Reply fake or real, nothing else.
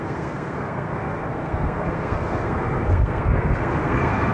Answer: fake